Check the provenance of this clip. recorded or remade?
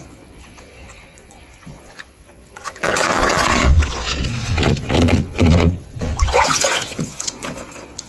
remade